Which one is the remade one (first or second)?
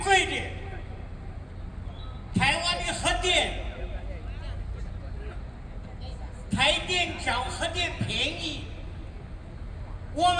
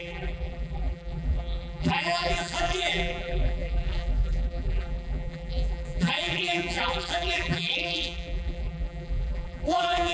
second